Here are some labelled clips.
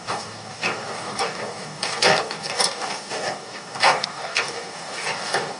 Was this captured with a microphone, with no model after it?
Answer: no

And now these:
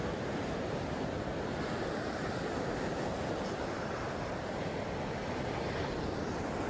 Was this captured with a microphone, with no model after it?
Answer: yes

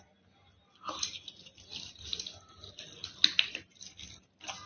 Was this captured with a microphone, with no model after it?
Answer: yes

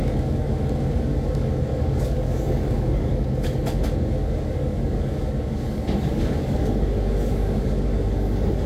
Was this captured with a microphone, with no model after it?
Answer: no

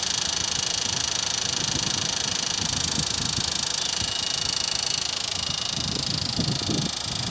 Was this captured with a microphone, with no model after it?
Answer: yes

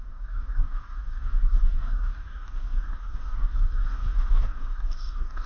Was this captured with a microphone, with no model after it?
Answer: no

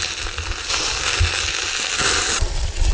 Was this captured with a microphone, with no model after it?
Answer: yes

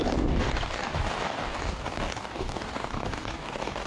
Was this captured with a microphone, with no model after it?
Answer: no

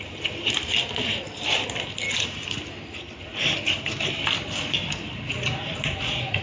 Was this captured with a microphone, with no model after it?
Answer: yes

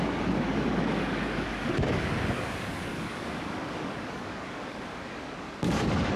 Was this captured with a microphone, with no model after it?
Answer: no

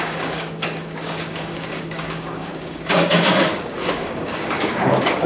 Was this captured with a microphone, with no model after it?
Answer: no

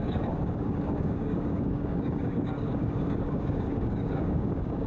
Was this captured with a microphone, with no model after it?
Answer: no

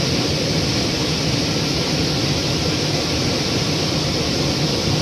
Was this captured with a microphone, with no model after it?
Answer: yes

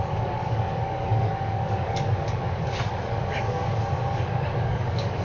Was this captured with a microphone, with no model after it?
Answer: no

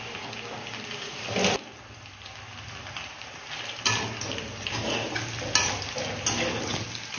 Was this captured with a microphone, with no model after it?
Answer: yes